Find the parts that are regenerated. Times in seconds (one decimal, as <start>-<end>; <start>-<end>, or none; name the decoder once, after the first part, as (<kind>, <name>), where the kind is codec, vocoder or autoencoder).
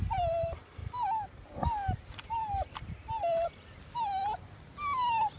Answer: none